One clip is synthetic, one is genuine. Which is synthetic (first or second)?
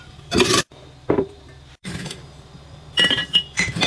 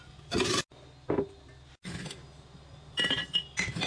first